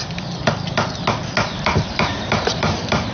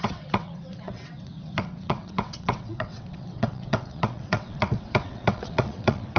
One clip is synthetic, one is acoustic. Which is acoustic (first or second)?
first